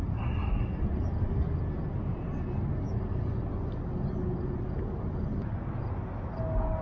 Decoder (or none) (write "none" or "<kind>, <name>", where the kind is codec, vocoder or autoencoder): none